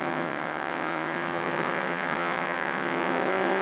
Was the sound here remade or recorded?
remade